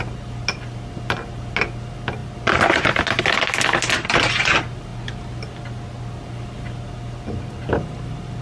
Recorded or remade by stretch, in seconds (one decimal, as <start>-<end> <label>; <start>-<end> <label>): 0.0-8.4 recorded